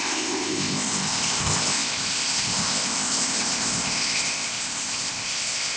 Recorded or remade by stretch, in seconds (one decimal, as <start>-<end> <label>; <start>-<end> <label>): 0.0-5.8 remade